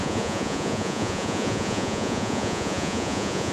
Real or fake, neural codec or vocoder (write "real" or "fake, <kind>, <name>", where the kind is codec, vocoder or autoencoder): fake, vocoder, Vocos